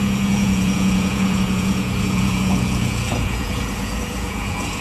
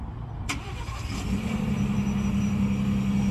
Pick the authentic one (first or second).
second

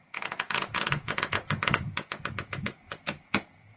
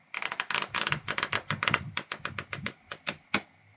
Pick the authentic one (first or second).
second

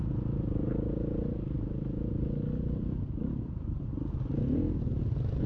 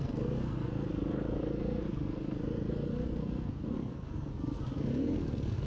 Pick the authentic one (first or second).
first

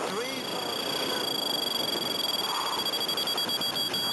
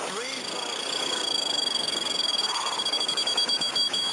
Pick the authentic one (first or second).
first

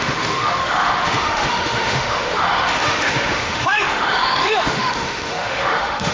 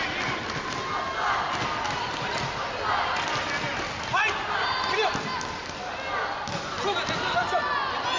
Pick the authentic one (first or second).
second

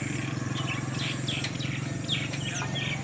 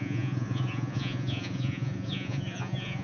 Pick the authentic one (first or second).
first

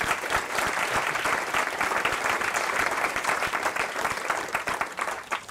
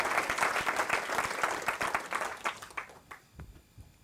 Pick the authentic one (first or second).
second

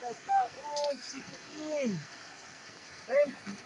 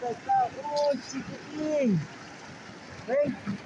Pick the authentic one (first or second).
second